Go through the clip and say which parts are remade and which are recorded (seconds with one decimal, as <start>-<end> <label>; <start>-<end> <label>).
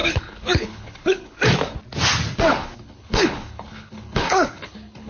0.0-1.4 remade; 1.4-2.5 recorded; 2.5-5.1 remade